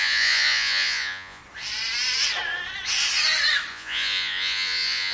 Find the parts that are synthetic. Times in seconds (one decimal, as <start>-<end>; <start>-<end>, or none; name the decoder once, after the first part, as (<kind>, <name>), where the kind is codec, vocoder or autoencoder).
0.0-1.4 (vocoder, Vocos); 3.7-5.1

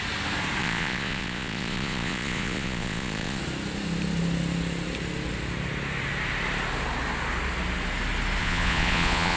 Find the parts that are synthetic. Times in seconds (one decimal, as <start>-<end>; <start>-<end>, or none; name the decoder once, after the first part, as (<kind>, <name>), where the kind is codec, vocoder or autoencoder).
0.6-3.4 (vocoder, Vocos); 8.4-9.4